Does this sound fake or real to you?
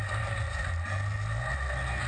real